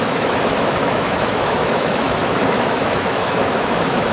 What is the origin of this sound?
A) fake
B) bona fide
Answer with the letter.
A